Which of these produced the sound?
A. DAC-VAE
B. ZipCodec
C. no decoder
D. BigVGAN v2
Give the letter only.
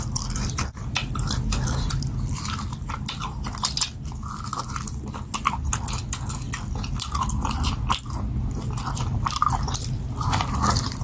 C